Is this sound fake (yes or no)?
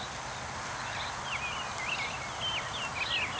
no